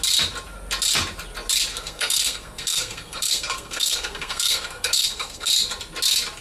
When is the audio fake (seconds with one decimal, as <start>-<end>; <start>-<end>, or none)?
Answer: 1.7-5.5

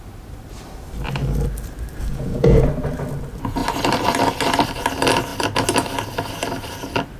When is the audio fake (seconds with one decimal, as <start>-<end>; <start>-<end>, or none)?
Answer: 2.1-2.7

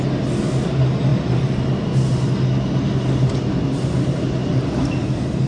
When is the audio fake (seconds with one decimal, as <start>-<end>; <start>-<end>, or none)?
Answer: none

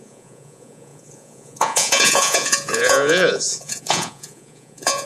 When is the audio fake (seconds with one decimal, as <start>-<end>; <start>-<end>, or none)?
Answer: 0.0-5.1

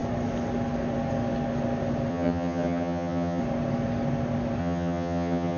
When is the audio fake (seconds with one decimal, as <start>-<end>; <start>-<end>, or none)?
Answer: 2.1-3.4; 4.6-5.6

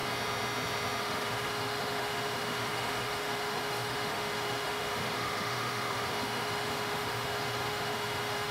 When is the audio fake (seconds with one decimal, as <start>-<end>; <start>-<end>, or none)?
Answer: 1.0-8.5

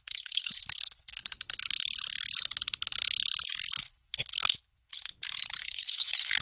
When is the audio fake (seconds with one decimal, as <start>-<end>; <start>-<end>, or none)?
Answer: 0.0-1.2; 3.8-5.1; 5.6-6.4